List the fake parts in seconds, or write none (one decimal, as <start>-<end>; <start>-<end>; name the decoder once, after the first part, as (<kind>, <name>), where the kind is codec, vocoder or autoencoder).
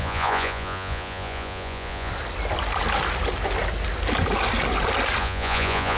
0.0-2.1 (vocoder, Vocos); 5.2-6.0